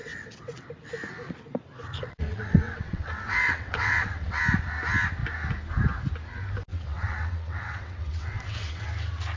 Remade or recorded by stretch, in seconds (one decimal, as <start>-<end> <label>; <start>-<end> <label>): 0.0-0.6 remade; 0.6-2.0 recorded; 2.0-4.4 remade; 4.4-6.7 recorded; 6.7-8.9 remade; 8.9-9.4 recorded